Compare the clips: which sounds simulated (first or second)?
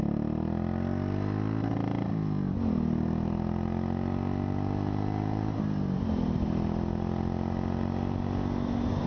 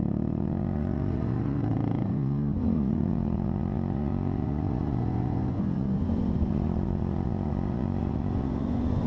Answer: second